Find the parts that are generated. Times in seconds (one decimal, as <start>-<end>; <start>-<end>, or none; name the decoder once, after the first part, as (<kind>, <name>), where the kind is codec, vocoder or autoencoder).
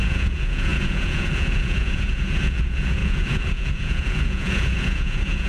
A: 0.0-5.5 (vocoder, Vocos)